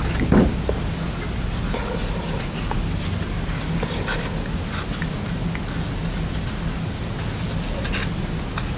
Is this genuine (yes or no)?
yes